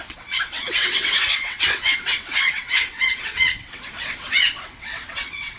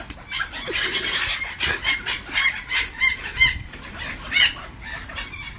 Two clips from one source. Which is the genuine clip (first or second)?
second